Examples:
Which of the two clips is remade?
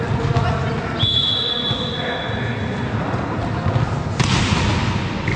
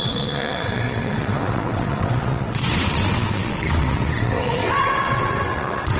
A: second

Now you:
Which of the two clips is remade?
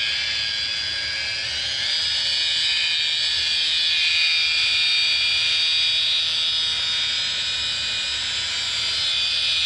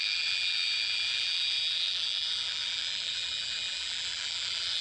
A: second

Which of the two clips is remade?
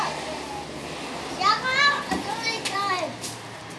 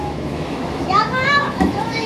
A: second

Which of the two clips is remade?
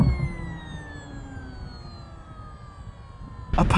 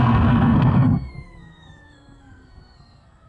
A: second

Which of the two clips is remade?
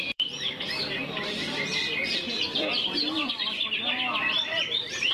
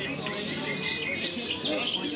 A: first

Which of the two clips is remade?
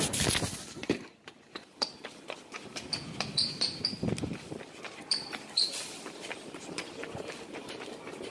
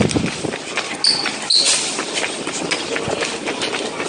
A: first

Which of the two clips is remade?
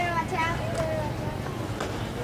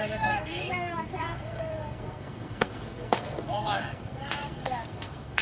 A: second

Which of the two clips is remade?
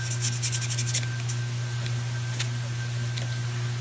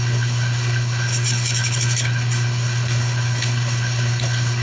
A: second